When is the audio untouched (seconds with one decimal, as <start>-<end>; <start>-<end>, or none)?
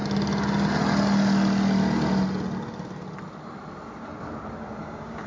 0.0-4.8